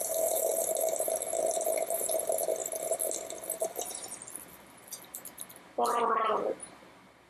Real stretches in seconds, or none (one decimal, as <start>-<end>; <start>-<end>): 0.0-0.5; 2.1-7.3